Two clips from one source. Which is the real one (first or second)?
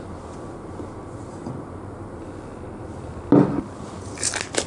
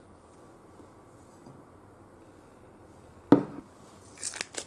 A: second